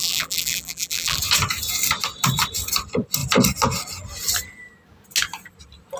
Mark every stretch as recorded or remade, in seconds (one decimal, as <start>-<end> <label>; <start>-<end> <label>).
0.0-1.2 remade; 1.2-6.0 recorded